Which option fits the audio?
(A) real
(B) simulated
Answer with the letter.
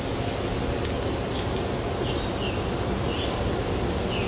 A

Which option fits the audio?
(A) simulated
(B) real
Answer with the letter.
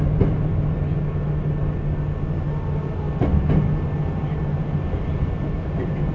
B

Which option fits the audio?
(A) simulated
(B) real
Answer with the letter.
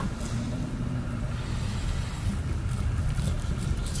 B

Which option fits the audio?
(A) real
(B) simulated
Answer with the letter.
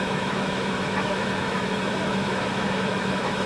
B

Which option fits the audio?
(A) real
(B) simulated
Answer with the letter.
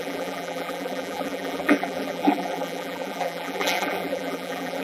B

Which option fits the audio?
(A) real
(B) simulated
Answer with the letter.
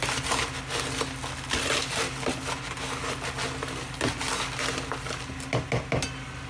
A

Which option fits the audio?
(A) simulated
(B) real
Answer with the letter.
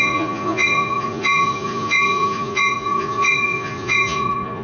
A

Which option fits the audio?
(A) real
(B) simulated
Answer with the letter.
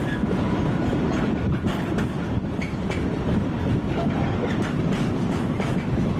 A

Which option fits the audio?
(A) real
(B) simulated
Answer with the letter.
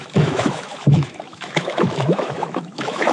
B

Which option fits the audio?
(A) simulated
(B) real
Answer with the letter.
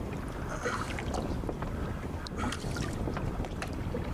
B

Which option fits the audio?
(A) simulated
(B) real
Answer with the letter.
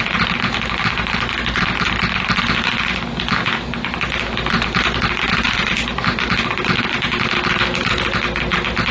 B